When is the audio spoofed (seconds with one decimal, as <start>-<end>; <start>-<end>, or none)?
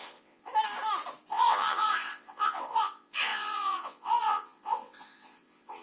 0.0-0.5; 1.3-5.8